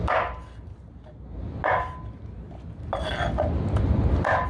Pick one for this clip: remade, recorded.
recorded